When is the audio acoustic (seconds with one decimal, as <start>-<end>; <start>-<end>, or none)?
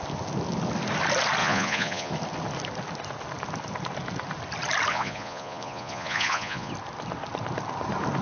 0.0-1.4; 2.1-4.9; 6.7-8.2